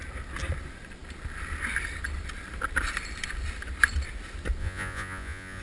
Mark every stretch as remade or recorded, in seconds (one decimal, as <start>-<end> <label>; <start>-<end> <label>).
0.0-4.6 recorded; 4.6-5.6 remade